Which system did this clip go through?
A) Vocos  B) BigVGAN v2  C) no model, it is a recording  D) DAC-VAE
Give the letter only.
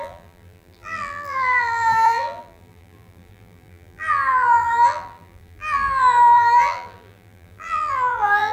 B